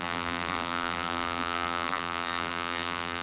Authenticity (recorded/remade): remade